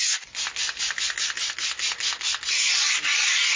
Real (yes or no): yes